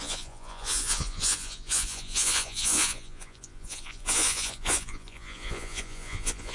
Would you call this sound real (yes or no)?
no